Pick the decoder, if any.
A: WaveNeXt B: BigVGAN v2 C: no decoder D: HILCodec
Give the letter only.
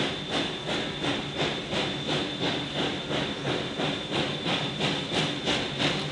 C